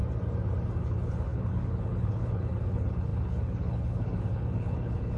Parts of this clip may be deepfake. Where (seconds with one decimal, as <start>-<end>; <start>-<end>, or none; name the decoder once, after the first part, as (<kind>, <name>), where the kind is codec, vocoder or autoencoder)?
0.8-5.2 (codec, HILCodec)